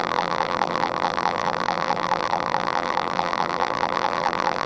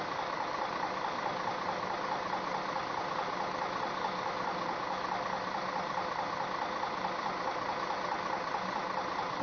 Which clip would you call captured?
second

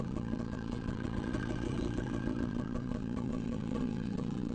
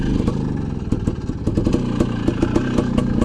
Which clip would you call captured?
second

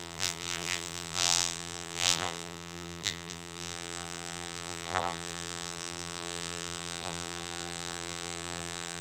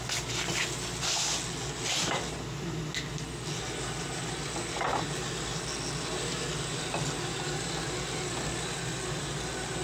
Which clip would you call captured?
second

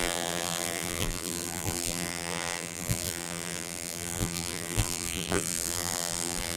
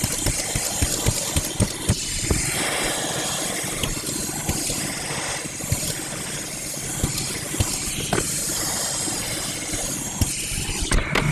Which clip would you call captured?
second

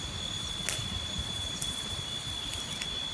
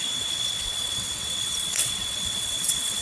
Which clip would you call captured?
first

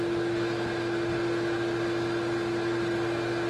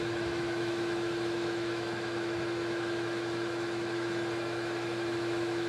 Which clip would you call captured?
first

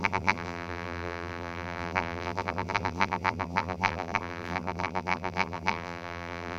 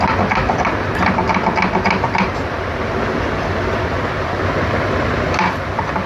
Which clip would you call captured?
second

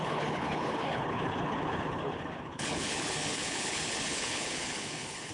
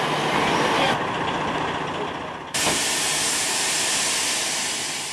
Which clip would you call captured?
second